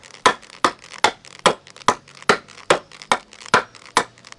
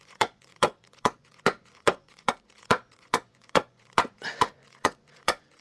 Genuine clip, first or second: first